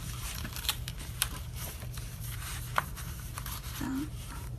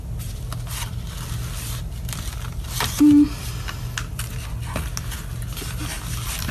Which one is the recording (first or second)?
second